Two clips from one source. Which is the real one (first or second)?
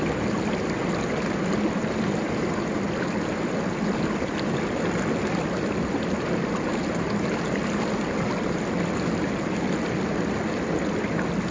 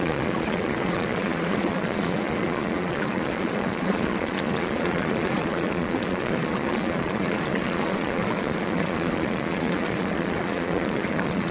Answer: first